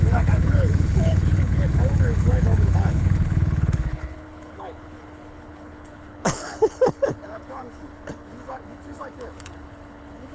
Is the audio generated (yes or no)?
yes